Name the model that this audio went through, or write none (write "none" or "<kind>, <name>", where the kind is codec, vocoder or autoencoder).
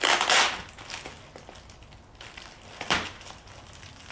none